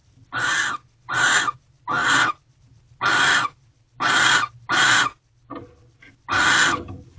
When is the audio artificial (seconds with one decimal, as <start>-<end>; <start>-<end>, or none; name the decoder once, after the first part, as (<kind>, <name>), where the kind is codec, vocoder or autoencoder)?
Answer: 0.0-0.5 (vocoder, BigVGAN v2)